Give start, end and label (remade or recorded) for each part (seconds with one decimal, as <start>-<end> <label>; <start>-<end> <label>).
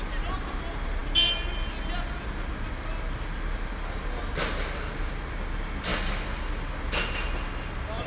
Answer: 0.0-8.1 recorded